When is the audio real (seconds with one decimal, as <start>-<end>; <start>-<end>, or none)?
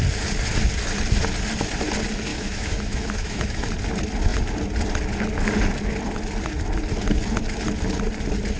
0.0-2.3; 3.7-8.6